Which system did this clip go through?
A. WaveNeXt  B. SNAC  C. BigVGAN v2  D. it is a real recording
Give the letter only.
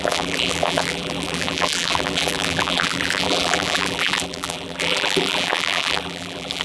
C